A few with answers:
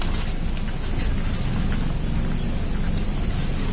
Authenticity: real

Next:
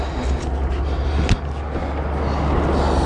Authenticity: real